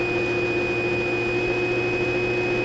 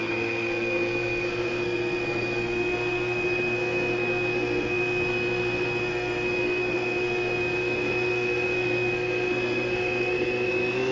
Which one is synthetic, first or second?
second